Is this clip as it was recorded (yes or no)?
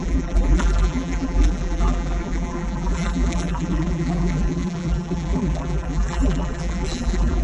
no